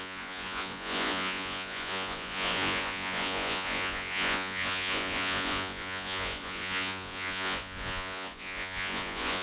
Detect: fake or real fake